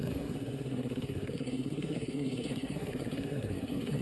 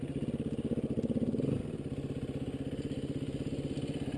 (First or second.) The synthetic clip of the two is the first